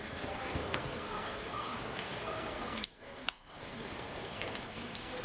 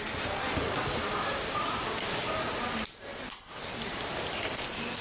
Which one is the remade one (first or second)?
first